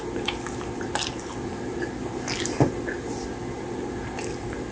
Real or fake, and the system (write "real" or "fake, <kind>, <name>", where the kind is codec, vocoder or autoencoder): real